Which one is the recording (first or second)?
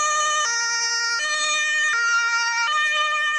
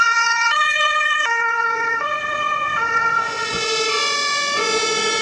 first